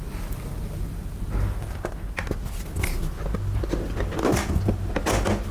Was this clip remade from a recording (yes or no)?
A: no